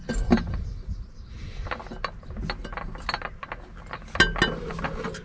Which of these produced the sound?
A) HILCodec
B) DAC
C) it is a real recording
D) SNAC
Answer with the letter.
C